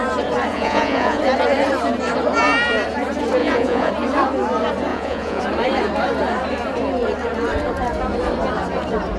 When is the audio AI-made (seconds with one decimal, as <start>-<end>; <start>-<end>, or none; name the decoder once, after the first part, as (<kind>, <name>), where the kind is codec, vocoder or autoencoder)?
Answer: 0.5-1.2 (vocoder, Vocos); 3.4-3.9; 4.9-5.4